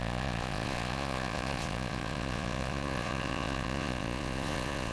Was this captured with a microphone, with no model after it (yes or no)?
no